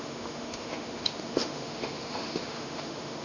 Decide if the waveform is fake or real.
fake